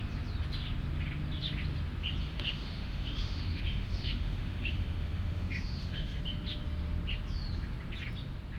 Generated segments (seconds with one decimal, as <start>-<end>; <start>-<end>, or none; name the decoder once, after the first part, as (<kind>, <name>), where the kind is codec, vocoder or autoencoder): 2.2-6.2 (autoencoder, DAC-VAE)